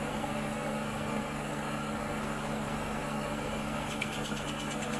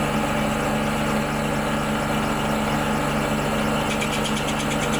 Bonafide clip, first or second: second